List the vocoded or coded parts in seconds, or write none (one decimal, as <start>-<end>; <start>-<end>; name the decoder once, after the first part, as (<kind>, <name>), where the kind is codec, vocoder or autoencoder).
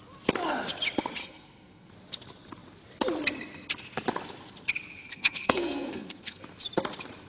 1.2-1.9 (codec, SNAC); 5.0-6.4